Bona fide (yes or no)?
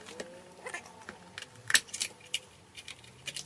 yes